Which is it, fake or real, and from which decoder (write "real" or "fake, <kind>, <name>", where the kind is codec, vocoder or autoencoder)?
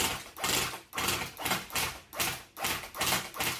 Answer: real